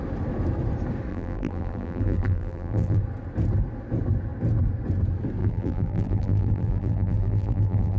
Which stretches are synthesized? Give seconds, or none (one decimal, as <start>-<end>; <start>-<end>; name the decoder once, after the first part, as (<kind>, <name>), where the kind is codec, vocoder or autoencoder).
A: 1.1-3.0 (vocoder, BigVGAN v2); 5.4-8.0